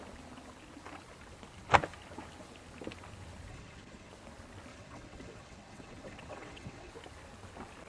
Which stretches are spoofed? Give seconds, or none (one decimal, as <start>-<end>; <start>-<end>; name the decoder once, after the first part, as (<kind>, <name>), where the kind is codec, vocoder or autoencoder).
3.5-4.1 (vocoder, WaveNeXt); 4.7-6.9